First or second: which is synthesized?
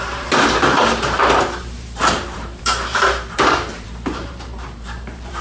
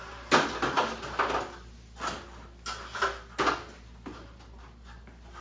first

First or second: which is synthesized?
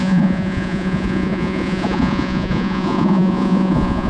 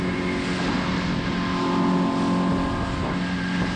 first